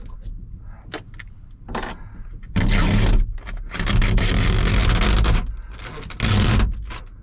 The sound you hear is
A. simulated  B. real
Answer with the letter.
B